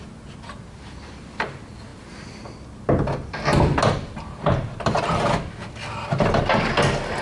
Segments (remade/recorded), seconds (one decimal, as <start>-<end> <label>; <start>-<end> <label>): 0.0-7.2 recorded

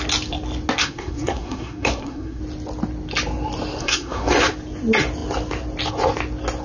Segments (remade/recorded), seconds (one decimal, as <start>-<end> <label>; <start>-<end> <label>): 0.0-0.8 recorded; 0.8-2.4 remade; 2.4-3.8 recorded; 3.8-4.3 remade; 4.3-6.6 recorded

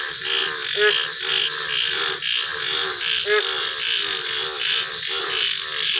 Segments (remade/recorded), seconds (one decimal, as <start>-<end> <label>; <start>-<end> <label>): 0.0-6.0 recorded

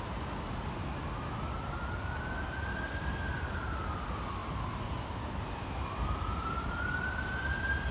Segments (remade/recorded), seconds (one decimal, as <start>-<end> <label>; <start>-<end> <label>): 0.0-7.9 recorded